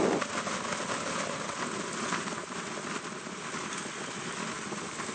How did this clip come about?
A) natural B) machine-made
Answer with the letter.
A